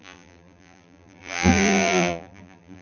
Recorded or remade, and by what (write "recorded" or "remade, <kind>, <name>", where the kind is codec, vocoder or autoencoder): remade, vocoder, BigVGAN v2